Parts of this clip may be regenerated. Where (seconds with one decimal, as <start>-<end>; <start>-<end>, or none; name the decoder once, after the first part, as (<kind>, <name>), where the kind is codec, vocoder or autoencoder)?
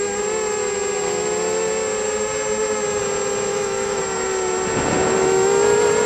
3.5-4.0 (autoencoder, DAC-VAE)